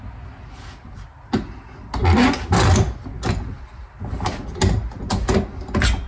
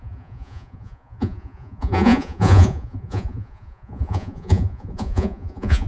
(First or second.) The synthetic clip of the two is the second